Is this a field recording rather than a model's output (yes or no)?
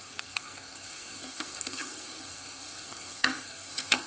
no